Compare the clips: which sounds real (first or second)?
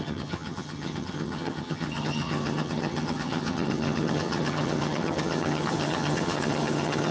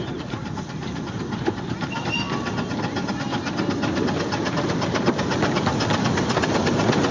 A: second